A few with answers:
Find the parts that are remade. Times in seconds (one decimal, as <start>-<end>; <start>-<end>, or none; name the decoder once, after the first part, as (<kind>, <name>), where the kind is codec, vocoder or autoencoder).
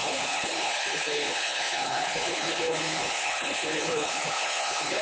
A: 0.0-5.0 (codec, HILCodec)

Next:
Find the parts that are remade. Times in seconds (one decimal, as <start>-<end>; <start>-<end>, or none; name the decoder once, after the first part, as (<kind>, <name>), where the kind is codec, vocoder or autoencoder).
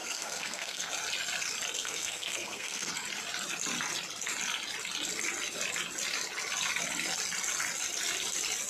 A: 0.0-0.9 (codec, SNAC); 1.8-2.9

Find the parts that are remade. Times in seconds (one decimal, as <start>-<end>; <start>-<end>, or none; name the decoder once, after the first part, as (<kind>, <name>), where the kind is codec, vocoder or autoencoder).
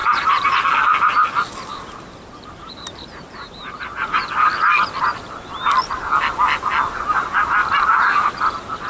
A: 0.0-0.6 (vocoder, BigVGAN v2); 1.7-4.3; 7.6-8.3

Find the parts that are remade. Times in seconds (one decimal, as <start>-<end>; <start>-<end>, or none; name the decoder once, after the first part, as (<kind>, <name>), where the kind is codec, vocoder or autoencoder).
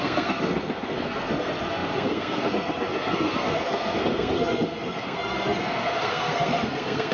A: 0.0-7.1 (codec, SNAC)